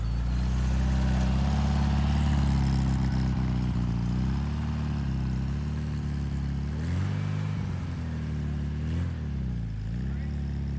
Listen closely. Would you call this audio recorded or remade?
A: recorded